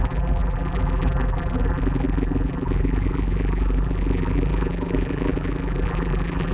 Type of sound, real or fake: fake